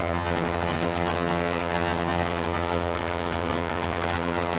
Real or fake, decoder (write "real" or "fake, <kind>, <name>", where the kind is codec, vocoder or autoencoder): fake, vocoder, HiFi-GAN